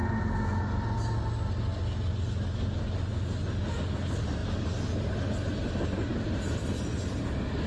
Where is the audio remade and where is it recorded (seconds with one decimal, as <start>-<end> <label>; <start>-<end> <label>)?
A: 0.0-7.7 recorded